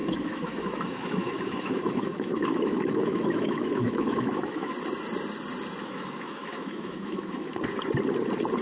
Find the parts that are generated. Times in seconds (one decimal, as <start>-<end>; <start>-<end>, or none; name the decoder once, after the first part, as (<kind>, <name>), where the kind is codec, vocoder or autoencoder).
0.0-4.7 (autoencoder, DAC-VAE); 5.8-7.5